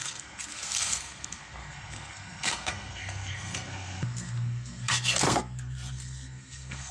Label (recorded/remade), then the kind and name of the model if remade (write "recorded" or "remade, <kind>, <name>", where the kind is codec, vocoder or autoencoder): remade, codec, SNAC